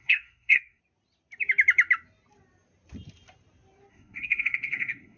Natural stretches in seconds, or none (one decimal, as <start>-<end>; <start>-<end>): 0.8-3.9